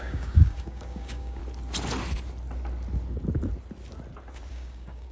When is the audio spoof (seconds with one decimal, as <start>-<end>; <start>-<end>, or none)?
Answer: 0.0-1.4; 4.5-5.1